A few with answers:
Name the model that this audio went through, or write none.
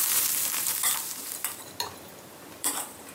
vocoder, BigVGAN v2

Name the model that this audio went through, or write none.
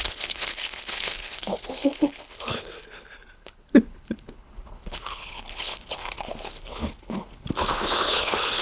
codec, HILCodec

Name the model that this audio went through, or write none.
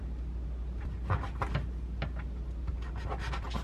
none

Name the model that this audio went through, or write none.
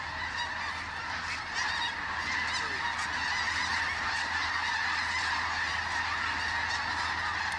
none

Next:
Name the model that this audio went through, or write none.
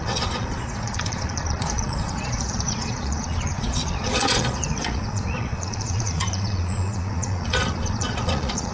vocoder, Vocos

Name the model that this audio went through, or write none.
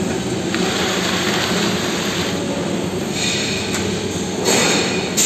none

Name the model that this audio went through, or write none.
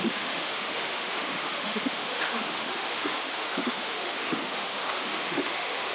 autoencoder, DAC-VAE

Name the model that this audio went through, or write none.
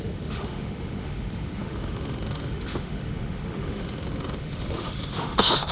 autoencoder, DAC-VAE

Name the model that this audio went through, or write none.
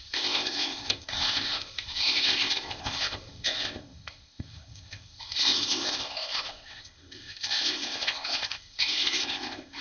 codec, ZipCodec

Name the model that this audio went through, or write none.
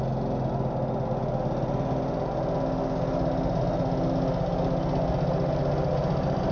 none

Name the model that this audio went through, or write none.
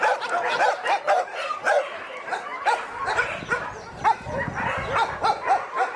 none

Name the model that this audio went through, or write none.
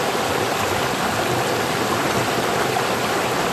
none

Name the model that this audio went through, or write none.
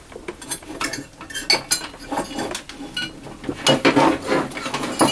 none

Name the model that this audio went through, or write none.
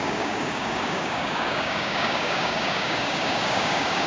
codec, DAC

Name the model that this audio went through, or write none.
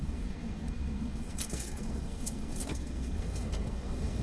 codec, SNAC